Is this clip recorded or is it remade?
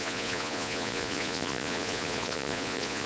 remade